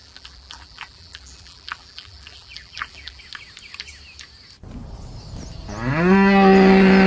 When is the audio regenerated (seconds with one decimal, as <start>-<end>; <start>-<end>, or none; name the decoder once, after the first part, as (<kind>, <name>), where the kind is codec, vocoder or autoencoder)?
0.0-3.2 (vocoder, BigVGAN v2)